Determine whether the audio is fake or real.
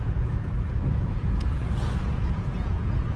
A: fake